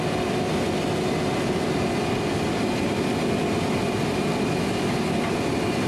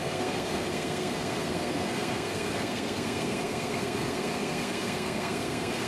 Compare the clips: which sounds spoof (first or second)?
second